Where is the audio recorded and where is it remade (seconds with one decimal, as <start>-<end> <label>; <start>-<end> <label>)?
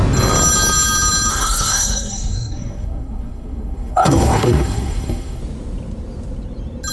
0.0-1.3 recorded; 1.3-5.4 remade; 5.4-6.9 recorded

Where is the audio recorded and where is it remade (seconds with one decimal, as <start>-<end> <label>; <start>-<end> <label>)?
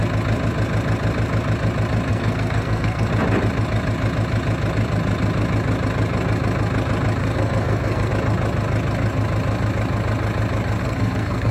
0.0-2.1 recorded; 2.1-3.1 remade; 3.1-7.2 recorded; 7.2-8.1 remade; 8.1-10.8 recorded; 10.8-11.5 remade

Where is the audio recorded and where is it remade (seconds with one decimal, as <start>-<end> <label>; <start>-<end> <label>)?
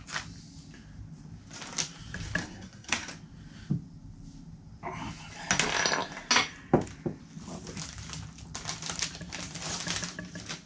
0.0-2.4 recorded; 2.4-3.1 remade; 3.1-10.7 recorded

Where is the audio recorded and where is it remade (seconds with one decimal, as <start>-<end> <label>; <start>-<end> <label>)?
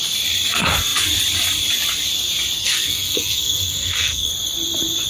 0.0-2.6 recorded; 2.6-4.3 remade; 4.3-5.1 recorded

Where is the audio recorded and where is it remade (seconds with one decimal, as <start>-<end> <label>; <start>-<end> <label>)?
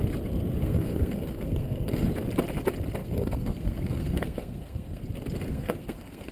0.0-0.6 recorded; 0.6-2.1 remade; 2.1-3.0 recorded; 3.0-5.0 remade; 5.0-5.5 recorded; 5.5-6.3 remade